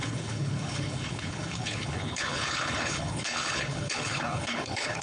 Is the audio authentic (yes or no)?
no